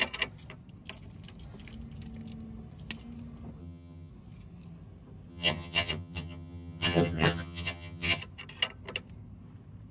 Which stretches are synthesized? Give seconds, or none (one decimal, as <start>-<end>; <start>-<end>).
3.6-4.1; 5.3-8.2